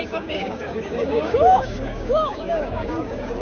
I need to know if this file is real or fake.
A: fake